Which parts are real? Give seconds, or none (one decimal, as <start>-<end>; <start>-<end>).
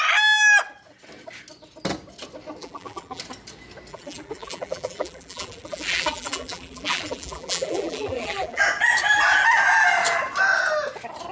0.0-2.6; 3.2-3.9; 8.6-11.3